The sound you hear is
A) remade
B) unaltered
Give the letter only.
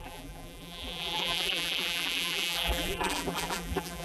A